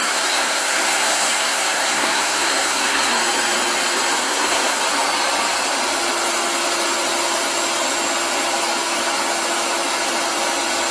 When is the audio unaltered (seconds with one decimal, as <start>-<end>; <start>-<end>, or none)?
3.2-4.2; 4.8-10.9